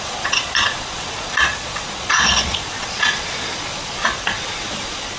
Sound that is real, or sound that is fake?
fake